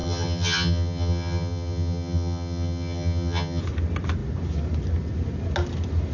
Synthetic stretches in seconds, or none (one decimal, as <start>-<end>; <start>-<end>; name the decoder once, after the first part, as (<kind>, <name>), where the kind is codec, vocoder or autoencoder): 0.0-3.6 (vocoder, HiFi-GAN)